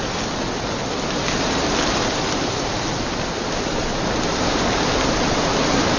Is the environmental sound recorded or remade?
recorded